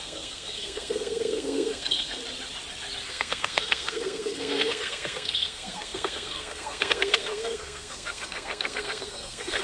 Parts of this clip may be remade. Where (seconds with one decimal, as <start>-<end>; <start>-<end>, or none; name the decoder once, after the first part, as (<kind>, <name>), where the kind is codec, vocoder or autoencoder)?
0.0-2.2 (codec, SNAC); 3.1-9.6